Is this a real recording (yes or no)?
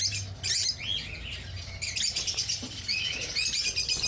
yes